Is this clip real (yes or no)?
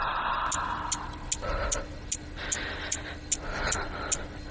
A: yes